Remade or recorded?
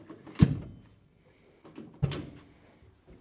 recorded